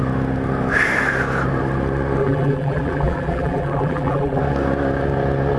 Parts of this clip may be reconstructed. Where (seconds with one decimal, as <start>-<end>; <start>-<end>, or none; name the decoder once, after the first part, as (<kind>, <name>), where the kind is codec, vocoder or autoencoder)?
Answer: 2.2-4.4 (vocoder, BigVGAN v2)